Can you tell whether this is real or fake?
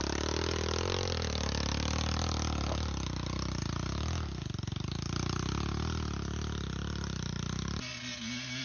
real